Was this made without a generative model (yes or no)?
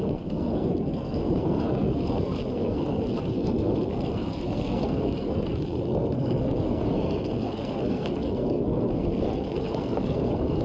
no